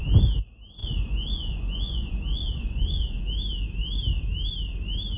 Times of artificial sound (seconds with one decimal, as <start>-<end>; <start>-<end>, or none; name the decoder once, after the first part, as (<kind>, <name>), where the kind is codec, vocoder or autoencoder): 0.8-3.2 (vocoder, Vocos)